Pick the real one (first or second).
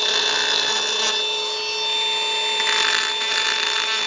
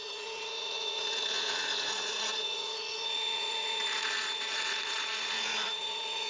first